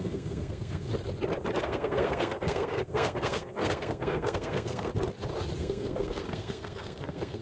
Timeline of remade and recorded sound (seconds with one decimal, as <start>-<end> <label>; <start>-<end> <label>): 0.0-0.9 remade; 0.9-1.6 recorded; 1.6-4.9 remade; 4.9-5.6 recorded; 5.6-7.4 remade